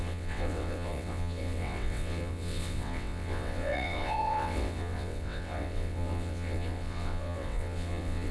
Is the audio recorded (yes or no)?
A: no